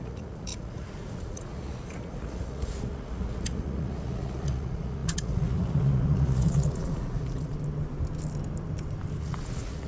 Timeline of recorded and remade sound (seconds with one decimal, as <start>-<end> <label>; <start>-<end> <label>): 0.0-7.5 remade; 7.5-9.2 recorded; 9.2-9.9 remade